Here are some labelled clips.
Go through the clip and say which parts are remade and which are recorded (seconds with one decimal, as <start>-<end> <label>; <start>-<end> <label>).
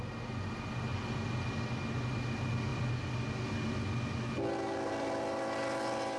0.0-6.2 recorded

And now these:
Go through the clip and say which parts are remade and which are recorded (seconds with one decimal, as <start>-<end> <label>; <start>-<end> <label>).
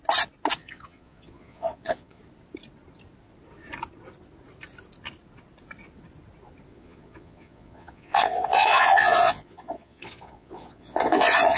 0.0-0.6 recorded; 0.6-2.2 remade; 2.2-6.7 recorded; 6.7-11.6 remade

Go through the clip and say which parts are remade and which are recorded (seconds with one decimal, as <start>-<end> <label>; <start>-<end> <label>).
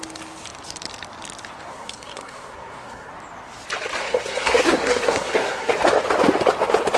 0.0-1.7 recorded; 1.7-3.1 remade; 3.1-4.0 recorded; 4.0-5.7 remade; 5.7-7.0 recorded